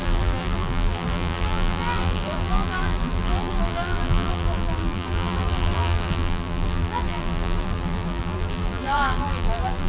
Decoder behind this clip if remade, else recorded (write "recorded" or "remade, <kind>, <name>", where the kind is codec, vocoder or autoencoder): remade, vocoder, BigVGAN v2